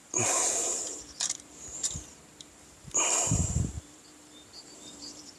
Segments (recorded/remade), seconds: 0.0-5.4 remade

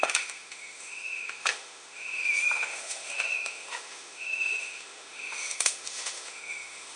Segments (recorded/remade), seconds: 0.0-7.0 remade